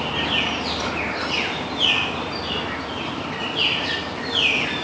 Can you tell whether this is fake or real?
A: fake